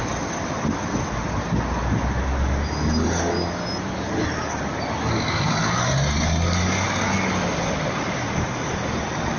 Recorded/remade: recorded